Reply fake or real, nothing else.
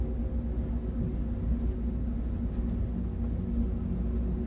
real